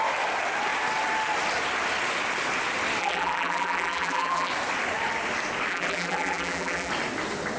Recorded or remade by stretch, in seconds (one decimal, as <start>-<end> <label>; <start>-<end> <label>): 0.0-3.0 recorded; 3.0-4.5 remade; 4.5-5.7 recorded; 5.7-6.9 remade; 6.9-7.6 recorded